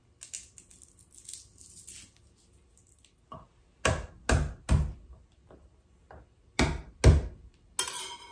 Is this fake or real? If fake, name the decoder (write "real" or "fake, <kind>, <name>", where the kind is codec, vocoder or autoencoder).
real